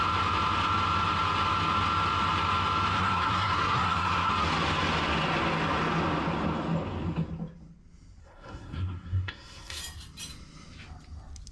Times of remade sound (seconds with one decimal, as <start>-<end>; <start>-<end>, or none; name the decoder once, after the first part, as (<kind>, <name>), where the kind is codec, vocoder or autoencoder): 2.9-4.3 (codec, SNAC); 8.2-9.8

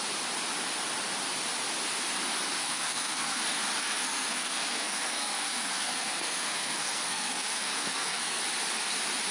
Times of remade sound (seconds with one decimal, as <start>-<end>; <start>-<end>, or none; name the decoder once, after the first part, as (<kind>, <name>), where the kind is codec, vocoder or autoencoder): 2.6-3.4 (codec, SNAC); 3.8-8.4

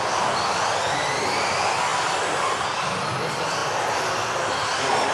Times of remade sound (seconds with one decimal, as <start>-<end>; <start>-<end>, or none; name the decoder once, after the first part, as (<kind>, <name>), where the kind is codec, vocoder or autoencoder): none